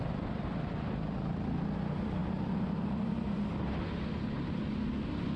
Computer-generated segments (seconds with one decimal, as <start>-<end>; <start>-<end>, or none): none